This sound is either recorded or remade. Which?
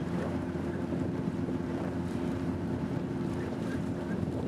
remade